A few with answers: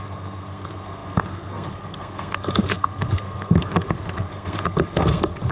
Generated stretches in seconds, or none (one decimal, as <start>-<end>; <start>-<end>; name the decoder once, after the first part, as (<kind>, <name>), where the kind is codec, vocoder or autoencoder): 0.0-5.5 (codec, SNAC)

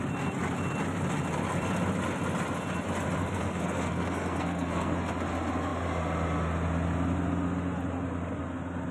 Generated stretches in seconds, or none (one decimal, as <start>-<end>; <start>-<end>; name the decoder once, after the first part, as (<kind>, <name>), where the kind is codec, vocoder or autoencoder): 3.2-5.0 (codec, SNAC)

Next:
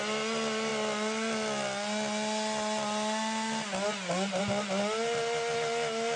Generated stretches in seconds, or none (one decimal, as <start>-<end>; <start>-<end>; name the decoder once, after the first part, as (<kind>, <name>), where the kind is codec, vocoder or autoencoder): none

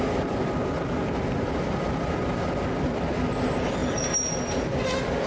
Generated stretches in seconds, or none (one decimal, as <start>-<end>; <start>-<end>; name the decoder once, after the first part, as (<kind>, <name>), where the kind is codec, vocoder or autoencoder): none

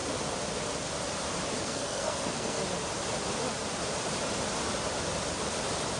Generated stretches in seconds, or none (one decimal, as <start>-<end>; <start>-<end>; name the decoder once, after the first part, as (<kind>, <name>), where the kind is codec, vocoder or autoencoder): 1.6-2.6 (codec, SNAC)

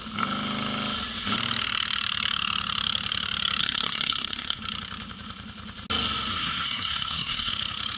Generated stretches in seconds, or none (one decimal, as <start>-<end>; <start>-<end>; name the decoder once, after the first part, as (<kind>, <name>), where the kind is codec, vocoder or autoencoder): 3.6-4.6 (codec, SNAC); 6.3-7.5

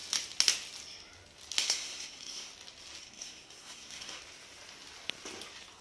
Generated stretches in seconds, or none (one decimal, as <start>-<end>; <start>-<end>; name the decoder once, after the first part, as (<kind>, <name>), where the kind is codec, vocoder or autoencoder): 1.6-2.5 (codec, SNAC); 3.0-4.2